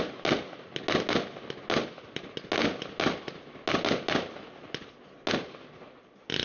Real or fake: real